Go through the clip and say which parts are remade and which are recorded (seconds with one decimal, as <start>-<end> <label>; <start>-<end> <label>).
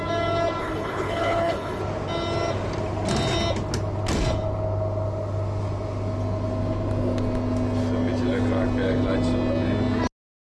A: 0.0-0.6 recorded; 0.6-1.8 remade; 1.8-10.4 recorded